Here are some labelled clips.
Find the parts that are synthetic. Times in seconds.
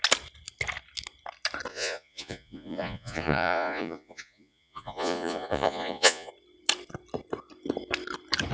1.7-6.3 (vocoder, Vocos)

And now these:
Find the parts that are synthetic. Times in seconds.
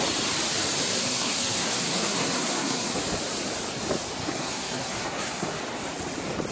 1.0-3.0 (codec, SNAC); 4.2-5.6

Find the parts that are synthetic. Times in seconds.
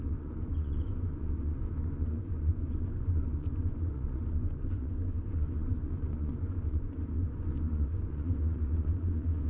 0.0-9.5 (vocoder, Vocos)